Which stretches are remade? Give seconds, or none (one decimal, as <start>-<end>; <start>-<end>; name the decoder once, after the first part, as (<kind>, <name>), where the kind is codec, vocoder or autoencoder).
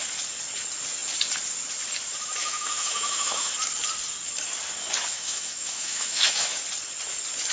2.4-3.5 (autoencoder, DAC-VAE); 5.1-6.6